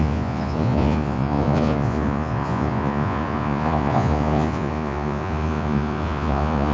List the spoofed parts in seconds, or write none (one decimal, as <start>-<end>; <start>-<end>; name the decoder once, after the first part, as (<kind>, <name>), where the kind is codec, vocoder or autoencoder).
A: 0.0-6.7 (vocoder, Vocos)